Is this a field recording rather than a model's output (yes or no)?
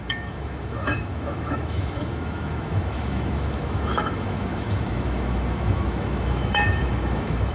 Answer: no